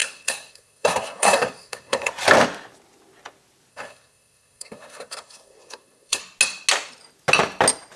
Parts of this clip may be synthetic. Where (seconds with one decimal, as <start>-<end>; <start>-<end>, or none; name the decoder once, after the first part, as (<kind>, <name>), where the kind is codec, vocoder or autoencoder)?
0.0-2.1 (codec, SNAC); 3.7-6.2